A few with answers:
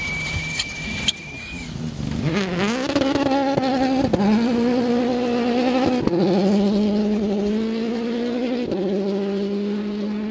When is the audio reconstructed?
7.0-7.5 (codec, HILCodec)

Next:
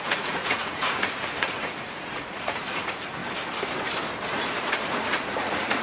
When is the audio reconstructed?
0.0-3.2 (vocoder, Vocos); 4.3-5.8

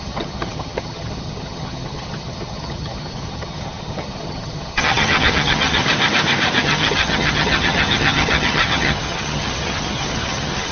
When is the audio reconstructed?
0.0-5.8 (vocoder, HiFi-GAN); 6.6-10.7

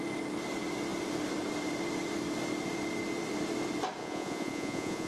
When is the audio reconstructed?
4.0-5.1 (vocoder, Vocos)

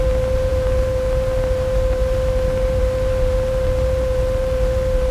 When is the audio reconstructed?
none

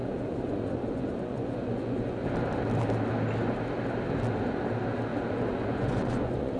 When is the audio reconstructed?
0.0-2.2 (vocoder, Vocos); 5.1-6.6